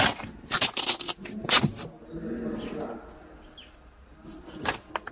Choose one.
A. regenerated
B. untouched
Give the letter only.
B